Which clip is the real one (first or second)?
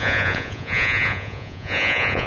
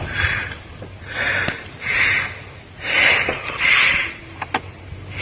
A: second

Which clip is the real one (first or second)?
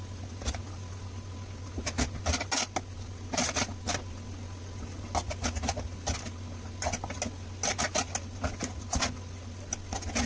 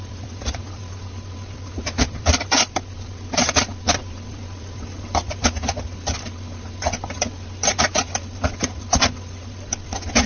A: first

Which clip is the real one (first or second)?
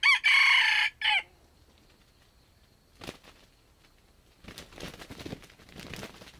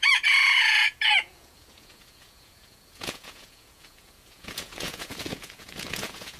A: first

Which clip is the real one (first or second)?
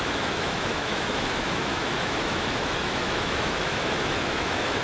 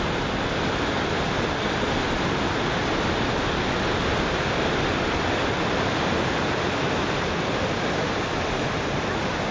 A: second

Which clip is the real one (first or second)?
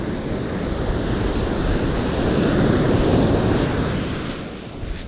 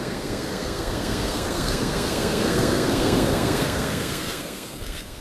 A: first